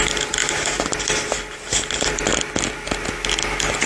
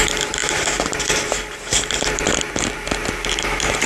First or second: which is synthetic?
second